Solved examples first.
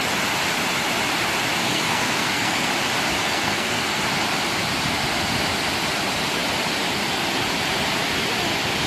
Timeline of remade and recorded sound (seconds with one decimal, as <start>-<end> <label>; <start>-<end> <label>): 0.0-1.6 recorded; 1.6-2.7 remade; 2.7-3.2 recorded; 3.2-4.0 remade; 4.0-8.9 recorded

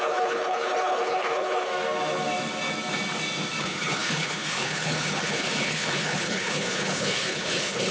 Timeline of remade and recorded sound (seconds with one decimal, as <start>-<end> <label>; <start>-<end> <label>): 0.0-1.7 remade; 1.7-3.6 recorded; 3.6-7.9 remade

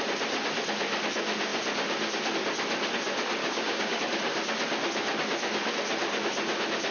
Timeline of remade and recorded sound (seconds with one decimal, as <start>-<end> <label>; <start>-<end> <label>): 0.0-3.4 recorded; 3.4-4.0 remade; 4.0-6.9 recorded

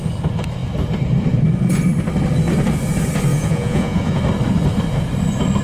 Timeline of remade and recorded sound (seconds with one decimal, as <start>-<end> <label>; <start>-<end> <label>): 0.0-3.3 recorded; 3.3-4.2 remade; 4.2-5.6 recorded

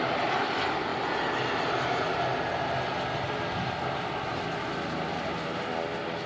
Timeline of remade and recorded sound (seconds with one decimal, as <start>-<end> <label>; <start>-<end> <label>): 0.0-6.3 recorded

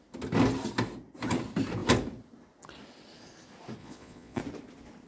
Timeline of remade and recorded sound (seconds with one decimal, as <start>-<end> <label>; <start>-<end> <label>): 0.0-3.8 recorded; 3.8-4.4 remade; 4.4-5.1 recorded